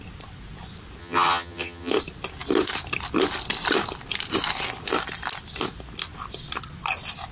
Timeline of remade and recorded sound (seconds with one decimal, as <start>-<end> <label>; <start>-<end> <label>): 0.0-1.0 recorded; 1.0-1.9 remade; 1.9-7.3 recorded